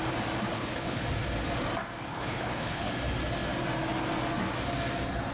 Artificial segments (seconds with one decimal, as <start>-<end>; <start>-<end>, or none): 0.5-1.0; 2.1-2.9